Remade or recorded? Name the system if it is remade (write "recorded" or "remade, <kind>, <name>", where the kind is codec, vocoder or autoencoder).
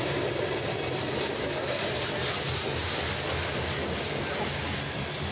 recorded